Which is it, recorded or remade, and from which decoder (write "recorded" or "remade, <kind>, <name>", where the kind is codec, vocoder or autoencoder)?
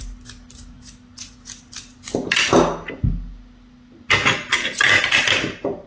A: recorded